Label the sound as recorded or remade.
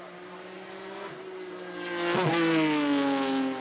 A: recorded